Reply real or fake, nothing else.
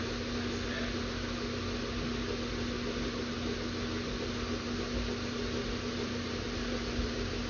real